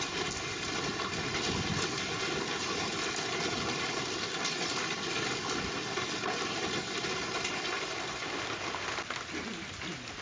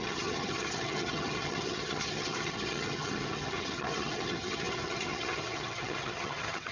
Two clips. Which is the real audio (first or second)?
first